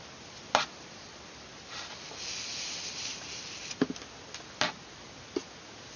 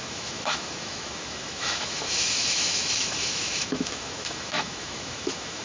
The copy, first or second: second